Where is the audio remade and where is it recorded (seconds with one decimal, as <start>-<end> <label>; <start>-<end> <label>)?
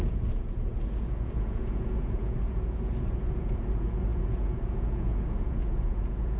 0.0-6.4 remade